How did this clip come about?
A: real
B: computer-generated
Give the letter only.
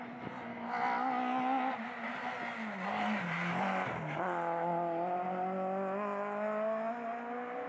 A